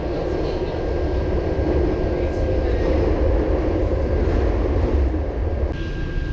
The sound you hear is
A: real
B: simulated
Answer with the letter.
A